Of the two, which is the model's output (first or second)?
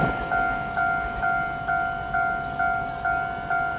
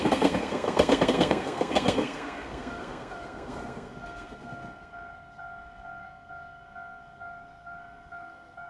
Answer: second